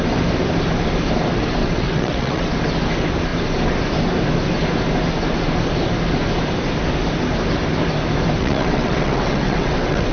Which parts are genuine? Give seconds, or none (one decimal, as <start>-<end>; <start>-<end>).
0.0-1.6; 2.5-8.4

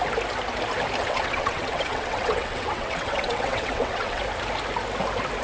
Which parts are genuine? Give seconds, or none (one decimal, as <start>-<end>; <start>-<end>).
0.0-1.0; 4.2-5.4

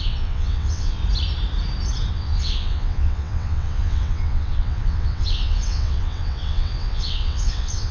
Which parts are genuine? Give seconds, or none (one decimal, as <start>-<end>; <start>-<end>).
1.0-2.1